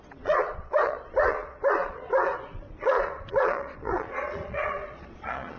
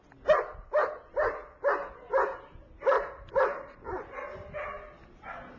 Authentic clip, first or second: second